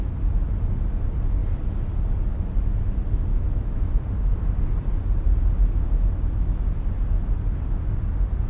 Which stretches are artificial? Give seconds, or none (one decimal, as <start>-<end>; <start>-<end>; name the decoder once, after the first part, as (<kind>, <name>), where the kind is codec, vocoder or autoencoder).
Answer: 3.3-3.9 (autoencoder, DAC-VAE)

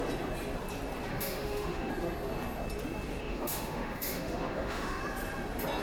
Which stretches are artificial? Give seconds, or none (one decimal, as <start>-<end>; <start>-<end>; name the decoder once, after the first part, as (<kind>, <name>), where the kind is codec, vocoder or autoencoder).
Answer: 1.1-1.9 (autoencoder, DAC-VAE); 3.2-5.0